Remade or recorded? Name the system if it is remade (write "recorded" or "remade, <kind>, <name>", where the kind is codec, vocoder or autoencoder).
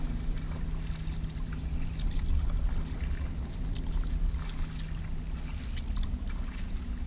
recorded